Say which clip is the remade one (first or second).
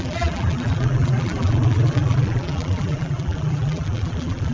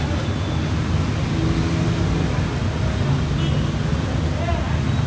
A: first